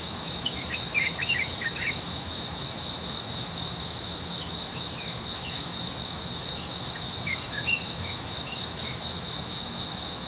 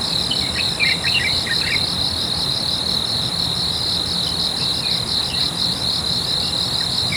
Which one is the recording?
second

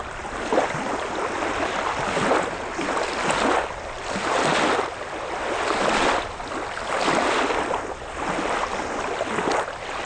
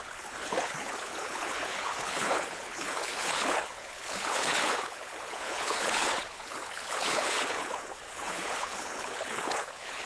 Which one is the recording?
first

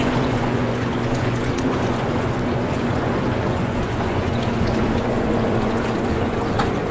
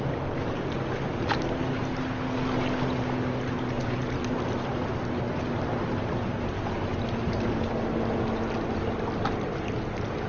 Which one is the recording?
second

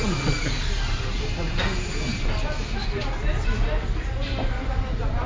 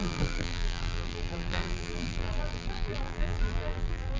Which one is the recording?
first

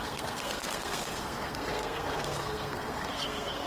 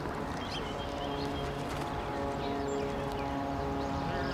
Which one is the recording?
second